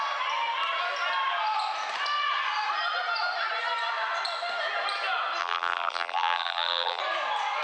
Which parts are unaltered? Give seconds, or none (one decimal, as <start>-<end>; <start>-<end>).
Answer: 0.0-5.4; 7.0-7.6

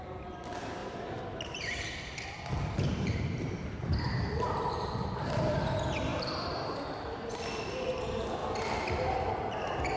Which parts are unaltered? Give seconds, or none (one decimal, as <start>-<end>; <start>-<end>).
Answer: 0.0-0.8; 5.6-6.1; 7.3-10.0

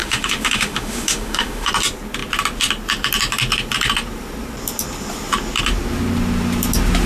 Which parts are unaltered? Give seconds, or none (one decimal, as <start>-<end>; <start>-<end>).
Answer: 1.7-7.1

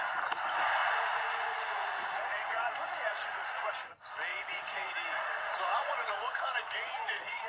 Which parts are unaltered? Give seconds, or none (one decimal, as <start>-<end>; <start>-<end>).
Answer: 0.0-0.8; 3.7-4.3; 4.9-5.7

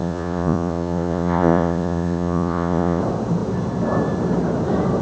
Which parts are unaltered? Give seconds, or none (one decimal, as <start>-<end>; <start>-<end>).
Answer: 3.0-5.0